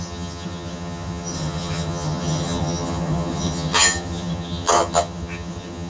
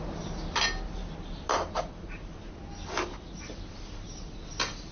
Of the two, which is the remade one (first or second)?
first